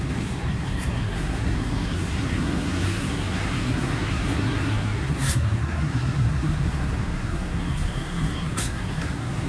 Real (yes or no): no